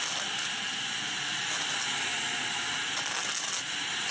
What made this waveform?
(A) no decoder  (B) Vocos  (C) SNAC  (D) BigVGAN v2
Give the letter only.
A